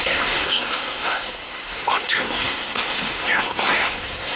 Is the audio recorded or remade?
remade